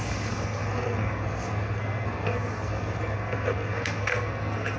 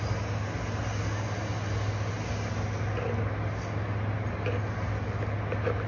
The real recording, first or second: second